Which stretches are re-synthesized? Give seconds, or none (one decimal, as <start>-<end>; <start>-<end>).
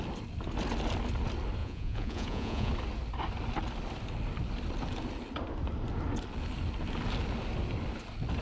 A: 1.6-2.7